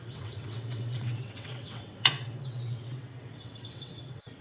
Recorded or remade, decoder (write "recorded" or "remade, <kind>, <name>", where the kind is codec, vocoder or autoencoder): remade, vocoder, WaveNeXt